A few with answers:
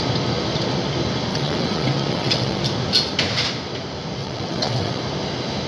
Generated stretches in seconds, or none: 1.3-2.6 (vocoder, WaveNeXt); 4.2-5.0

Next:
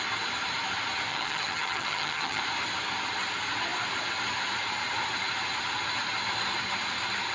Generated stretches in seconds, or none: 1.1-2.4 (vocoder, HiFi-GAN)

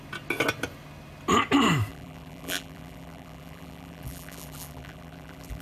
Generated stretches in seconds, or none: 1.9-5.6 (vocoder, BigVGAN v2)

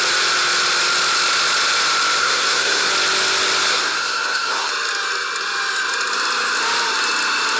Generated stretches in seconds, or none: 2.2-2.9 (codec, SNAC); 3.7-4.7

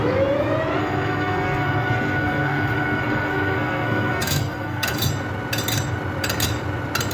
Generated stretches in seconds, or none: 0.8-5.1 (codec, SNAC)